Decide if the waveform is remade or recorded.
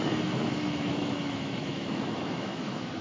remade